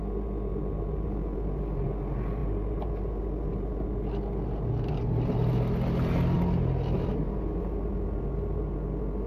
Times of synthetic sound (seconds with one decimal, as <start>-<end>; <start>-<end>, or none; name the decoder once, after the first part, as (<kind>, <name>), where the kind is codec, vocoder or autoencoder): none